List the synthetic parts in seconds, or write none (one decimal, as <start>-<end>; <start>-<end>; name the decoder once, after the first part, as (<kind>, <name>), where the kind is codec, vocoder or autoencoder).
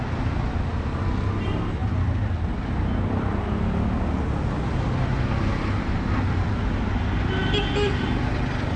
none